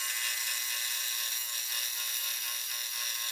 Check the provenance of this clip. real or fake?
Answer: real